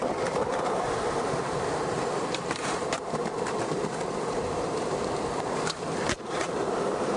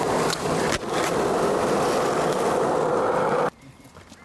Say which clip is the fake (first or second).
first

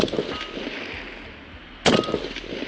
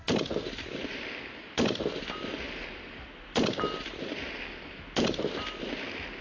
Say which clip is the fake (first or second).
second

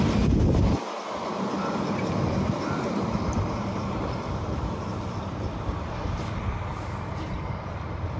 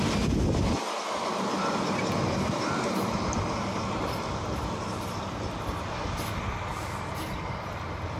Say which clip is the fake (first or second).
first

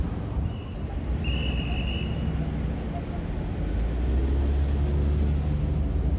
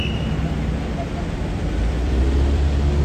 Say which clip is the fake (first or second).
second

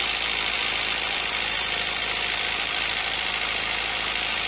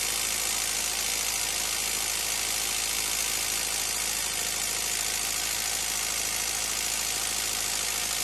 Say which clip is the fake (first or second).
first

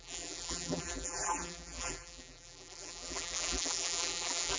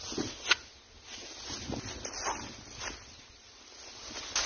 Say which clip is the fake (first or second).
first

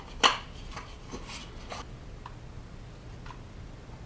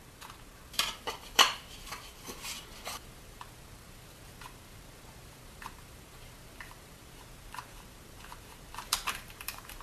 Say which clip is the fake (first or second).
second